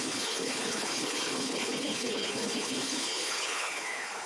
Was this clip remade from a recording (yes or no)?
yes